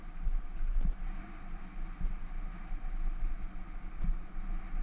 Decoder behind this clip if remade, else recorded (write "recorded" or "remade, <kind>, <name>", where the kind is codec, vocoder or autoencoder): recorded